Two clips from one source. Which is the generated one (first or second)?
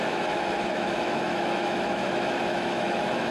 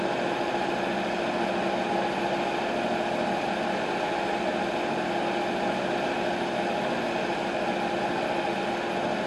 first